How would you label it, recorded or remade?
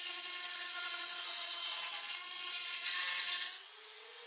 remade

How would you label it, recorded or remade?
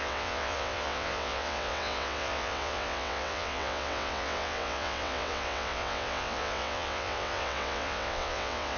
remade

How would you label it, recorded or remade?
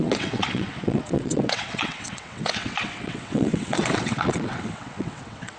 remade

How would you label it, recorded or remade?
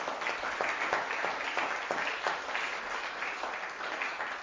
recorded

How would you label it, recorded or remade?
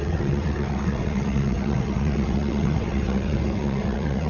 remade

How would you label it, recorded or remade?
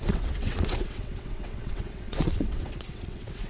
remade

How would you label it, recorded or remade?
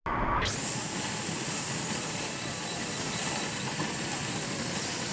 recorded